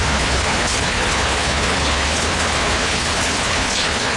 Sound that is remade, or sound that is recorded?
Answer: remade